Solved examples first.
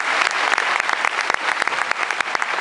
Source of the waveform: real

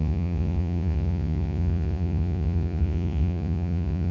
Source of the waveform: fake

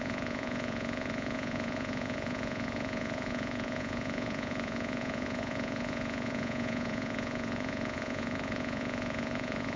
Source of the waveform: fake